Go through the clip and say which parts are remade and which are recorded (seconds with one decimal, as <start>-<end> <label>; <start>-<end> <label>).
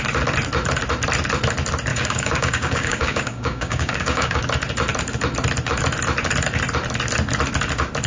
0.0-1.9 recorded; 1.9-4.4 remade; 4.4-8.1 recorded